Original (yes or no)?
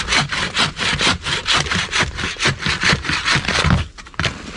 yes